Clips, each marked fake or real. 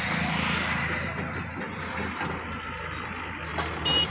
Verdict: real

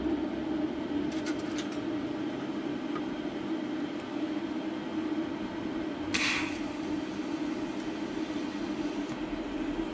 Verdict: real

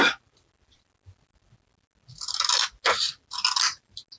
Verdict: real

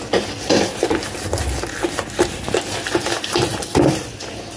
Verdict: real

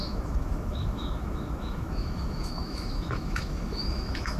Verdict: fake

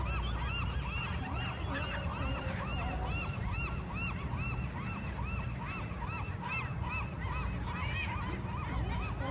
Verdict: real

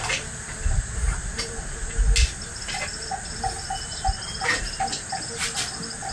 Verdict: real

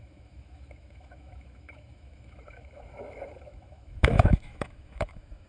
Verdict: fake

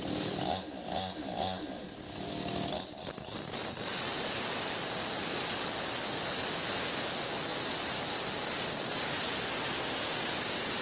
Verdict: real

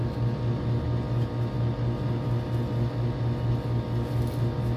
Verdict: real